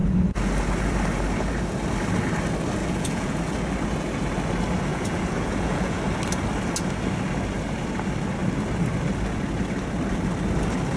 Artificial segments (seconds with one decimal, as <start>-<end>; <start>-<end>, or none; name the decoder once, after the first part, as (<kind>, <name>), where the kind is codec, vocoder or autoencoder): 2.8-3.4 (vocoder, Vocos); 4.9-6.0